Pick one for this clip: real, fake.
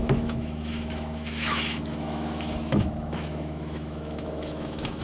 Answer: fake